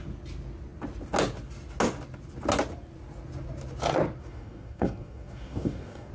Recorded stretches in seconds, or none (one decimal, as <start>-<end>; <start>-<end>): 0.0-4.2